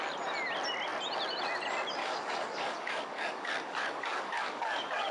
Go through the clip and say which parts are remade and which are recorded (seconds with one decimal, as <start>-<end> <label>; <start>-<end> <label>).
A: 0.0-2.0 recorded; 2.0-5.1 remade